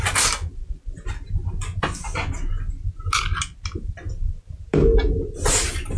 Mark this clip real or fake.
real